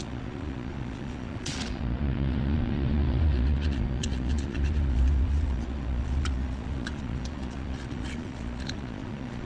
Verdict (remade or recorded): remade